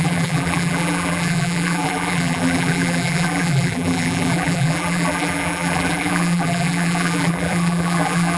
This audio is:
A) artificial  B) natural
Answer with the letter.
A